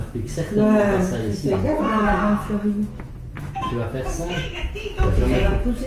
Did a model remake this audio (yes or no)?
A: yes